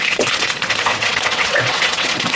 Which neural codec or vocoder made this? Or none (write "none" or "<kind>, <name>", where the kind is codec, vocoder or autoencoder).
vocoder, WaveNeXt